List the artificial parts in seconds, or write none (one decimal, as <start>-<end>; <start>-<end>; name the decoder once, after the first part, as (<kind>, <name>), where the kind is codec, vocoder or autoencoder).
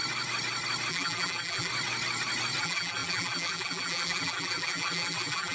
0.9-1.7 (vocoder, BigVGAN v2); 2.6-5.5